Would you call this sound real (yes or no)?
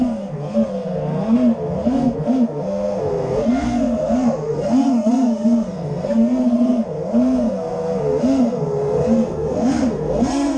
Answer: no